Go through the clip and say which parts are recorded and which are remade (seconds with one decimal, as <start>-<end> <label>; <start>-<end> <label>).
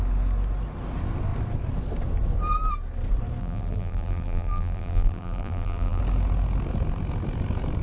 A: 0.0-3.4 recorded; 3.4-6.0 remade; 6.0-7.8 recorded